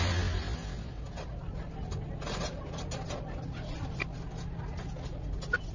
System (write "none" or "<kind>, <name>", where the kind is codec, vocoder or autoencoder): none